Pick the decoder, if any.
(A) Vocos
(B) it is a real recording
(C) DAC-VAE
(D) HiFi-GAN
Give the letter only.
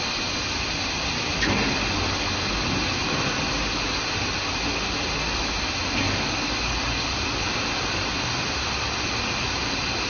B